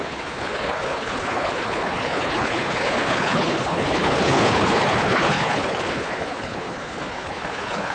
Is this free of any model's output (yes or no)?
no